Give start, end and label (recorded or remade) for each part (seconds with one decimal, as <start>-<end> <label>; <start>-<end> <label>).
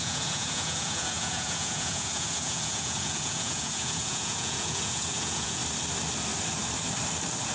0.0-5.6 remade; 5.6-7.5 recorded